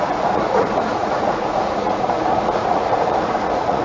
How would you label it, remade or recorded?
remade